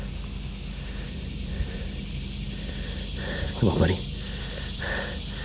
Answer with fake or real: real